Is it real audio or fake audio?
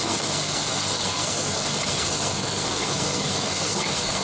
fake